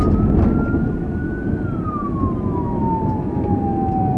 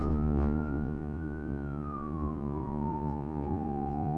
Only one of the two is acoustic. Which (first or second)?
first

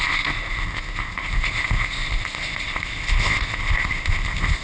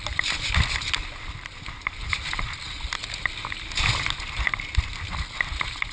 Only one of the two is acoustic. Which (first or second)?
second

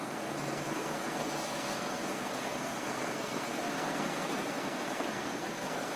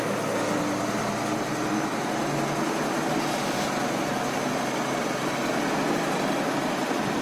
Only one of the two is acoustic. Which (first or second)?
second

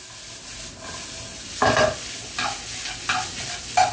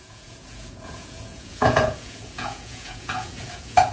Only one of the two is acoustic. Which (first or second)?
first